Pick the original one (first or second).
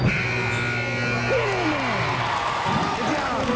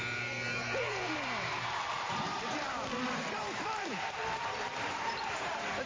first